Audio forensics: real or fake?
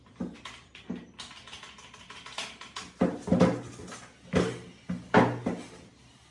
real